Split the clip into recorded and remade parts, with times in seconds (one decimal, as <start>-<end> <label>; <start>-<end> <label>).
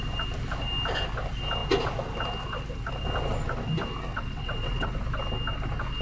0.0-4.1 recorded; 4.1-5.0 remade; 5.0-6.0 recorded